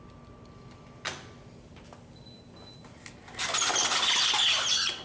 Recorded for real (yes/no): yes